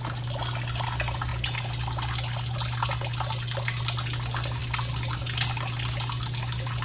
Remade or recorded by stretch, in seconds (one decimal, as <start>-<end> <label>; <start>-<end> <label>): 0.0-6.8 recorded